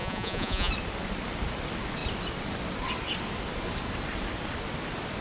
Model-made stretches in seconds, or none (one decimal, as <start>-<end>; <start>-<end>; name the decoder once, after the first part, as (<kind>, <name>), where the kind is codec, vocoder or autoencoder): 0.0-0.7 (vocoder, Vocos)